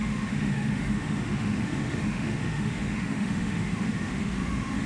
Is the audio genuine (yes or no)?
no